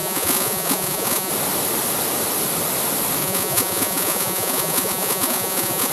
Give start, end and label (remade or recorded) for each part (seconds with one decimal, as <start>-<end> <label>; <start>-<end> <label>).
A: 0.0-1.3 remade; 1.3-3.2 recorded; 3.2-5.9 remade